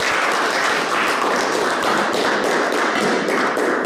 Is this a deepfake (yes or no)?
no